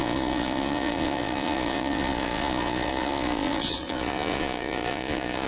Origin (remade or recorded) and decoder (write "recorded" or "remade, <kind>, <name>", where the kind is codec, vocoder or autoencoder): remade, vocoder, Vocos